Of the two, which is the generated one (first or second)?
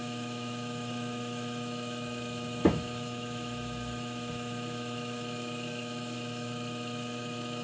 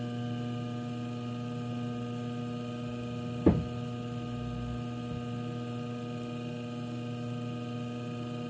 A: first